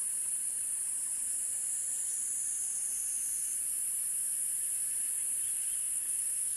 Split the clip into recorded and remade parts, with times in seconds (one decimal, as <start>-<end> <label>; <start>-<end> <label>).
0.0-5.8 recorded; 5.8-6.6 remade